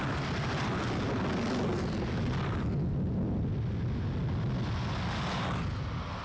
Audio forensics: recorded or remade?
recorded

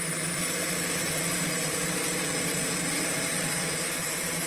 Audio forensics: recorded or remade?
remade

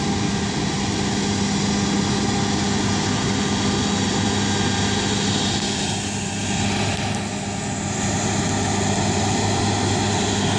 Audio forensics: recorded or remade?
recorded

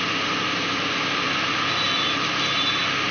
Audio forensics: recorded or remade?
recorded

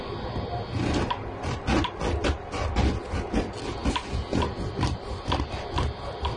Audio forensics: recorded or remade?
recorded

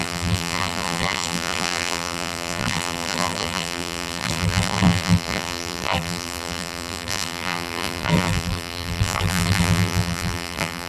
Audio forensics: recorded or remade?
remade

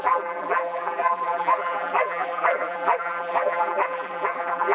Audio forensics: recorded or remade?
remade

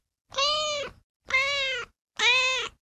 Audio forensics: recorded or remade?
recorded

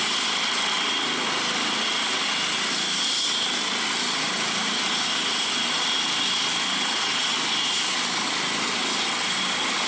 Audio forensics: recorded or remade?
recorded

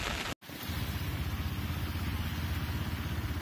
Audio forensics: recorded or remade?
recorded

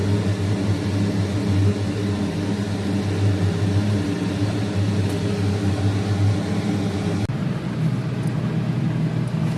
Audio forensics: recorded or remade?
recorded